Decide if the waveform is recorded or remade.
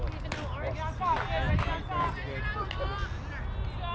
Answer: recorded